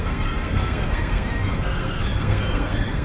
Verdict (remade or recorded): remade